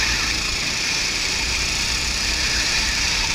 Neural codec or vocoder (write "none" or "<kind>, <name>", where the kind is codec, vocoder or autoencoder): vocoder, BigVGAN v2